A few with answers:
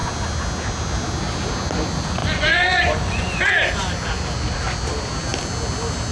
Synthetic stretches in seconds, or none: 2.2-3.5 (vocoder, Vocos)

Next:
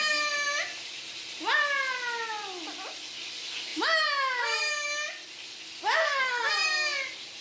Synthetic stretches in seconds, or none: 6.0-6.5 (codec, SNAC)

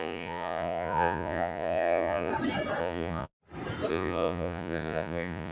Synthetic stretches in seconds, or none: 0.0-2.3 (vocoder, Vocos); 2.8-3.3; 3.9-5.5

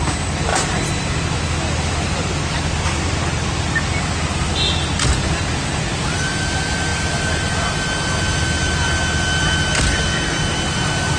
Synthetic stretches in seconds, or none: none